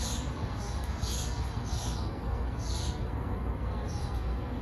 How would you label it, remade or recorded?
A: remade